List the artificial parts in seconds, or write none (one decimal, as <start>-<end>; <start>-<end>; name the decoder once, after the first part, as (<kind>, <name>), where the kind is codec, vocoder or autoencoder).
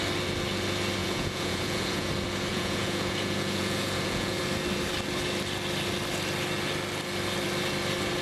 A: 1.0-2.1 (vocoder, Vocos); 2.5-4.4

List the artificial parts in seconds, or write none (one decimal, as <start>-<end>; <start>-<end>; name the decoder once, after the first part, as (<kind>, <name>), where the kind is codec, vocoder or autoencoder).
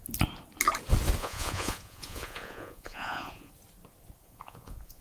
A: 1.2-3.5 (vocoder, Vocos); 4.2-5.0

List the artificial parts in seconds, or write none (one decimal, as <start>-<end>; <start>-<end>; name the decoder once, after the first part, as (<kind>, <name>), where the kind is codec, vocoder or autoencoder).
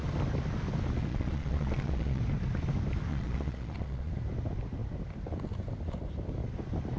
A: 1.1-2.2 (vocoder, Vocos); 3.1-4.1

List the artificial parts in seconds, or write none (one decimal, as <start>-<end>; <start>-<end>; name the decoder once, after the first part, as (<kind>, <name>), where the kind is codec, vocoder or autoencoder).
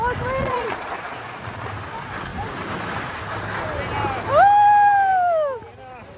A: 0.4-1.7 (vocoder, Vocos)